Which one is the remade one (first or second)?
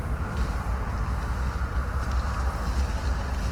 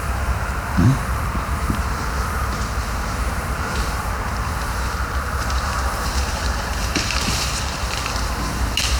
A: second